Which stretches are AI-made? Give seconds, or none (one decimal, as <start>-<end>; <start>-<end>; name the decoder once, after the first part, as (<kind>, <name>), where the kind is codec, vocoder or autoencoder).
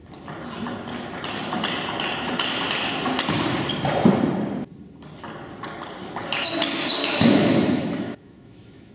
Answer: 7.0-8.9 (autoencoder, DAC-VAE)